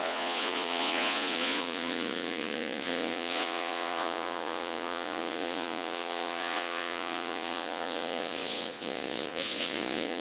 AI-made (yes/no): yes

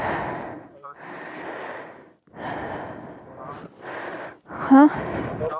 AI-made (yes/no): no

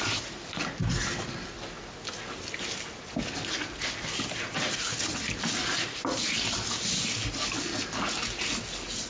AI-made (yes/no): no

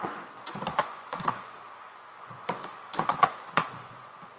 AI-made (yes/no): yes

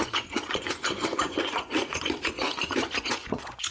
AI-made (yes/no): yes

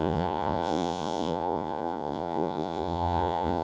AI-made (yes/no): yes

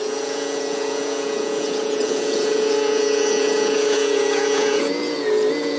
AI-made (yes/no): yes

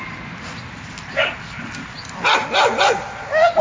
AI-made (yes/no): no